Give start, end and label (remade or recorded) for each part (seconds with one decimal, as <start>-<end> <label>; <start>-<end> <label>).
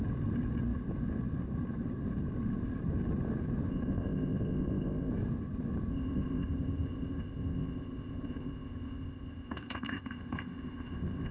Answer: 0.0-3.7 recorded; 3.7-5.1 remade; 5.1-5.9 recorded; 5.9-11.3 remade